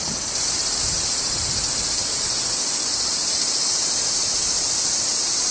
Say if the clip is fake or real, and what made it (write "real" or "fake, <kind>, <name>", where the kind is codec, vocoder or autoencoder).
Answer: fake, vocoder, BigVGAN v2